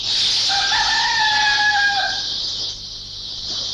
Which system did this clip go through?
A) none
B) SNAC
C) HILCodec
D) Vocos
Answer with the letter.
A